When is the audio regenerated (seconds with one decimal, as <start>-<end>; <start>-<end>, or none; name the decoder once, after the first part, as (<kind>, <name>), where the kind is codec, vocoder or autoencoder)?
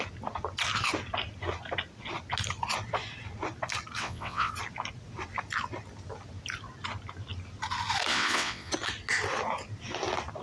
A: 4.0-4.5 (vocoder, WaveNeXt); 8.1-8.7